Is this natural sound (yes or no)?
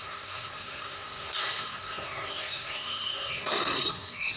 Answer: no